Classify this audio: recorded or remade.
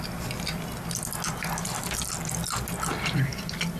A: recorded